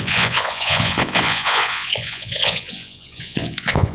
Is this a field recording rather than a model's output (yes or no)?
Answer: no